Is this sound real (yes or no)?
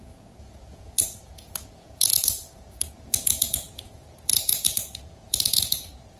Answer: no